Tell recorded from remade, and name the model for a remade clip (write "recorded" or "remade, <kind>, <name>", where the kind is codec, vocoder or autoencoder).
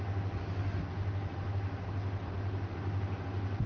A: recorded